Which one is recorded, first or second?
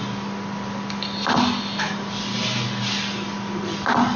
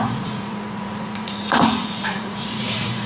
first